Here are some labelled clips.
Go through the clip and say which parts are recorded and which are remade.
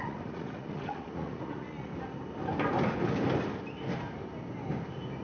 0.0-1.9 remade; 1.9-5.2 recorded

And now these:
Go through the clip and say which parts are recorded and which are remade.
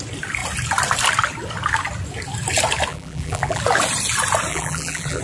0.0-2.9 recorded; 2.9-3.6 remade; 3.6-4.5 recorded; 4.5-5.2 remade